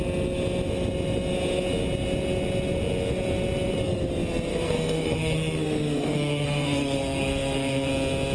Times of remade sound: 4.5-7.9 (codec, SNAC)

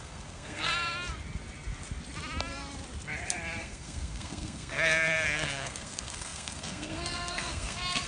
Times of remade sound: 0.0-0.7 (codec, SNAC); 3.6-8.1

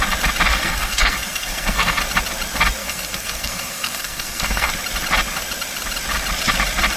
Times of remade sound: 0.5-2.0 (codec, SNAC); 2.8-4.7